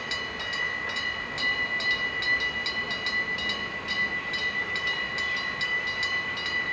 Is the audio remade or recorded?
recorded